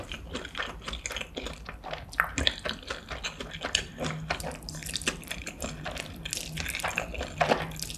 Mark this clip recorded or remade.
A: recorded